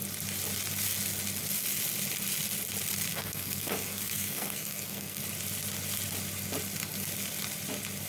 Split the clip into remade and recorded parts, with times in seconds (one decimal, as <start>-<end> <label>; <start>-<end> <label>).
0.0-3.1 recorded; 3.1-5.2 remade; 5.2-8.1 recorded

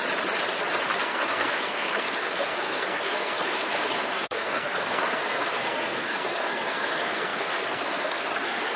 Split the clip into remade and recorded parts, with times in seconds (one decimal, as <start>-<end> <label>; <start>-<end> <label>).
0.0-1.0 recorded; 1.0-8.8 remade